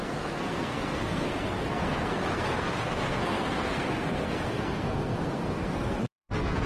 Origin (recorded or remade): remade